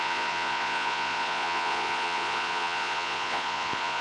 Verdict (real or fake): fake